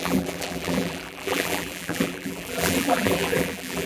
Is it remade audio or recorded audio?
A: remade